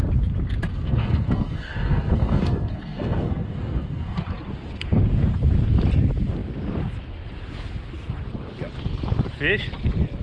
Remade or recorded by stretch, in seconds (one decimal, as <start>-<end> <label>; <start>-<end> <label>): 0.0-0.7 recorded; 0.7-4.2 remade; 4.2-10.2 recorded